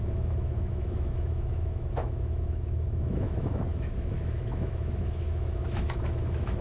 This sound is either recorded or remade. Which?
remade